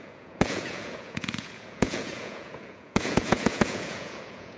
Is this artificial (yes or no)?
yes